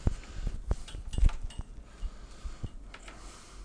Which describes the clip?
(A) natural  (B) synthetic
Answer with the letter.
A